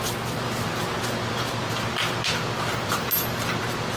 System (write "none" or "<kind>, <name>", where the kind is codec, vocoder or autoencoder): none